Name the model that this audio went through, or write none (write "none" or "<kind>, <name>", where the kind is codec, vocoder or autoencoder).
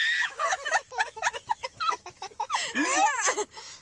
autoencoder, DAC-VAE